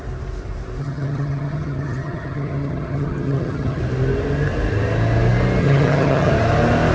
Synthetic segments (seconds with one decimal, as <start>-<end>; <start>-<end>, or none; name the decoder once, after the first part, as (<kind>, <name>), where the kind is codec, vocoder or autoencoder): 0.8-3.8 (vocoder, HiFi-GAN); 5.6-6.3